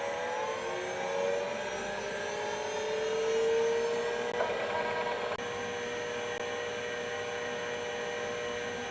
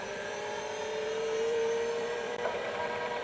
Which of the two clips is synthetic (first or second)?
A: second